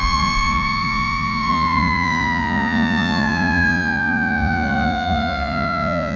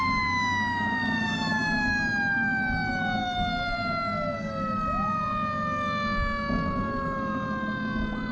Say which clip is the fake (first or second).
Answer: first